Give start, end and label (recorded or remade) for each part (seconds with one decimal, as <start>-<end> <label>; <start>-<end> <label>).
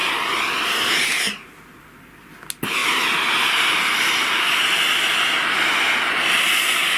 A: 0.0-7.0 recorded